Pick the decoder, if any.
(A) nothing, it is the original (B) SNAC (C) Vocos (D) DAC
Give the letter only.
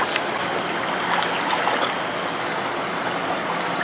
A